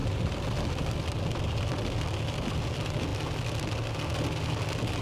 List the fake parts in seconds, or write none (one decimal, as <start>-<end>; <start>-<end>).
none